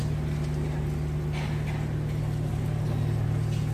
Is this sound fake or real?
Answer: real